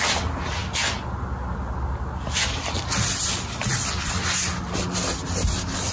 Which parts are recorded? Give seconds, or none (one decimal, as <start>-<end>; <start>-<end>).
0.0-5.9